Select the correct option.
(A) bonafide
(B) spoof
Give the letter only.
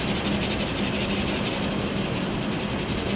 A